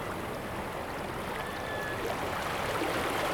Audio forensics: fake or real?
real